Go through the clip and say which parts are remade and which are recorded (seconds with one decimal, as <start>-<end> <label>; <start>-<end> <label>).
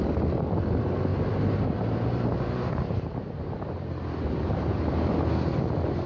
0.0-1.1 recorded; 1.1-4.8 remade; 4.8-6.1 recorded